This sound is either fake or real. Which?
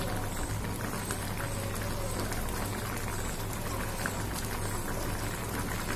real